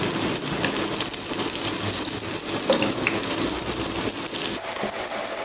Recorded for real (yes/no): yes